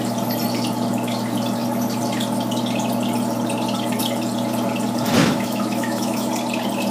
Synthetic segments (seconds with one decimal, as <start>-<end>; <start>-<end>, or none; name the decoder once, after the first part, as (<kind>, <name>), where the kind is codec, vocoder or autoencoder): 5.2-6.3 (autoencoder, DAC-VAE)